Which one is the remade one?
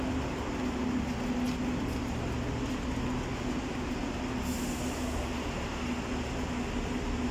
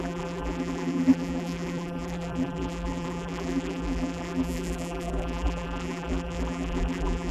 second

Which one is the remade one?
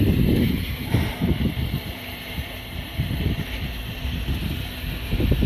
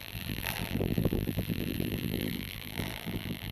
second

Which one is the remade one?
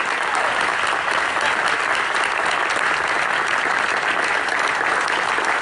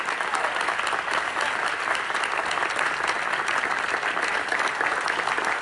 second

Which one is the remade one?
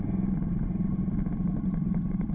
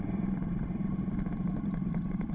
second